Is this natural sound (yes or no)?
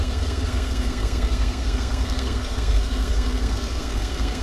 no